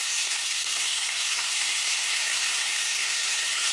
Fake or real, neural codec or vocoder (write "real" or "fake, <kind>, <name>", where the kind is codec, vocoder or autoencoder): fake, codec, SNAC